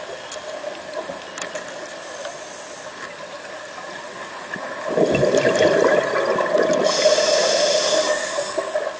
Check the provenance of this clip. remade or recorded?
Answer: recorded